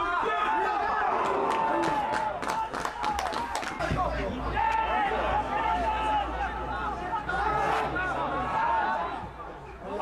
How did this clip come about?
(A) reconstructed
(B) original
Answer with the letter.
B